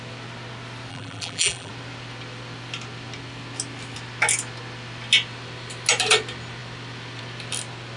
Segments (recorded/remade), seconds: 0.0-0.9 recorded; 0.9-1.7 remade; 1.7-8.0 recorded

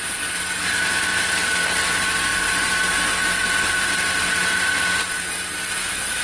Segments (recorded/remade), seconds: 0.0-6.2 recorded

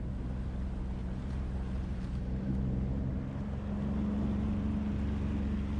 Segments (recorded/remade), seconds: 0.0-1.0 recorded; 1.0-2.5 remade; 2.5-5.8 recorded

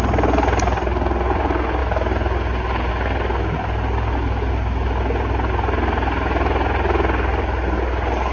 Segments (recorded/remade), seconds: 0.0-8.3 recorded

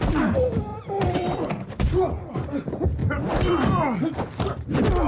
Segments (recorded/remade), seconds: 0.0-0.7 recorded; 0.7-2.3 remade; 2.3-3.0 recorded; 3.0-3.5 remade; 3.5-5.1 recorded

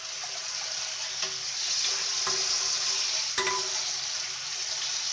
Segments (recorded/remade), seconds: 0.0-5.1 recorded

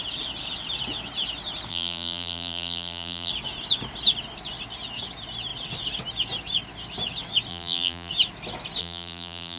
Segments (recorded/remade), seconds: 0.0-1.7 recorded; 1.7-3.3 remade; 3.3-7.5 recorded; 7.5-8.1 remade; 8.1-8.8 recorded; 8.8-9.6 remade

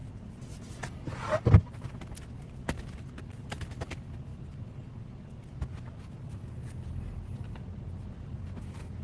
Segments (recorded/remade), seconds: 0.0-9.0 recorded